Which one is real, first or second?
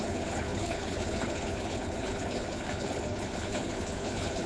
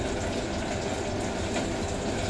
second